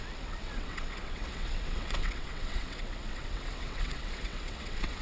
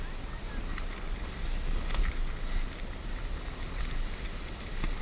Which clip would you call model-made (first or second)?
first